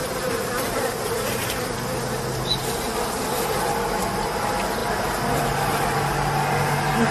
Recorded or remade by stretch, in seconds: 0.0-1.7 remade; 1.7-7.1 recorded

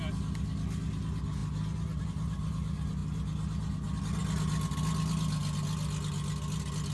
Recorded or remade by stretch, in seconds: 0.0-6.9 recorded